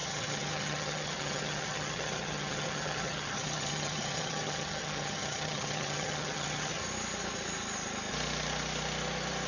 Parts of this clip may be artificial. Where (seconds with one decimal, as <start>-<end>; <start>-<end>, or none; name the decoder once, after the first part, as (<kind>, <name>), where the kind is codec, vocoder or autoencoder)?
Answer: 0.0-6.8 (vocoder, HiFi-GAN)